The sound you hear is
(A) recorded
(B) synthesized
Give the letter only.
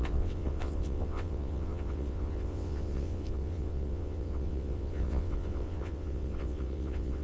B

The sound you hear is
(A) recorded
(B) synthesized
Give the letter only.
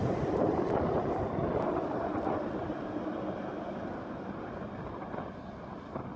A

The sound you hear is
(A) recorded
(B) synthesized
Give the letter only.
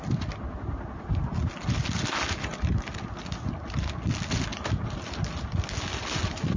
A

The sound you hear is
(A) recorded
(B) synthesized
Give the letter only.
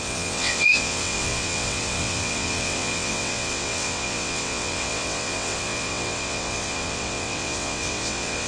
B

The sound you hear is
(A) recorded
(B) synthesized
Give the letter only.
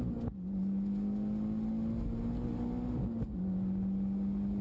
A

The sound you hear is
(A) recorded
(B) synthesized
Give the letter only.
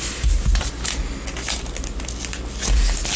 A